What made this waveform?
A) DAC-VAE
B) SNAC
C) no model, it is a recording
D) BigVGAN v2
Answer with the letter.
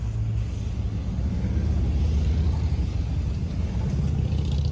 C